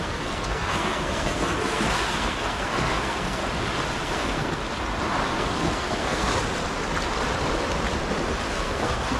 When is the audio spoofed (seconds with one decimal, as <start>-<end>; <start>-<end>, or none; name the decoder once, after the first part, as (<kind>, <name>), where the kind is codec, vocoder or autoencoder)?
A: 0.0-3.4 (codec, SNAC); 4.0-4.6; 5.3-6.3; 8.5-9.2